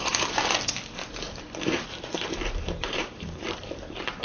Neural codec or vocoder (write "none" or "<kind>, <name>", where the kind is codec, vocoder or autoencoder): vocoder, BigVGAN v2